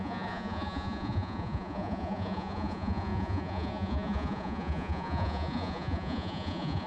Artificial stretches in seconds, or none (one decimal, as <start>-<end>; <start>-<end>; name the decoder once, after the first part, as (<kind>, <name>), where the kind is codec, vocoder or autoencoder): 0.0-6.9 (vocoder, Vocos)